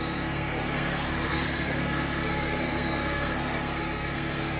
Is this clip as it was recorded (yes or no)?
no